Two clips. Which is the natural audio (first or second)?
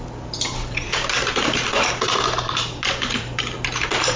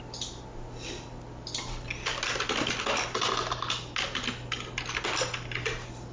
second